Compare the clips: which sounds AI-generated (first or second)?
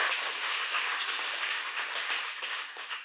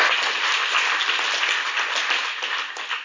first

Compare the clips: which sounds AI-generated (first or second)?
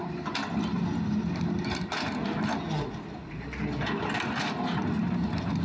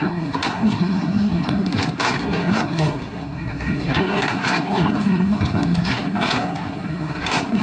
second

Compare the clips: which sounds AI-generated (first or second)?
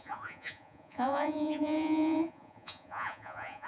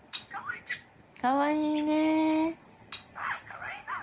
first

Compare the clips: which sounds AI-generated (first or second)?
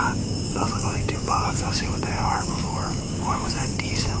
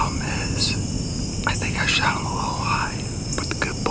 first